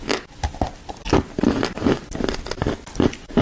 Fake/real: real